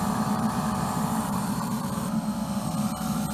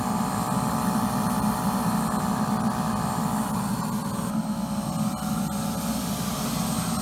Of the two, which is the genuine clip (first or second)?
second